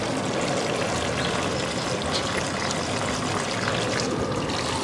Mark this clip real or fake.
real